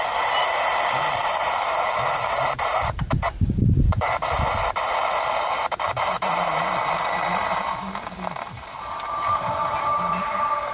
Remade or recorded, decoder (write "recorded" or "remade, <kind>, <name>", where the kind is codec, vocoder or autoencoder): remade, vocoder, BigVGAN v2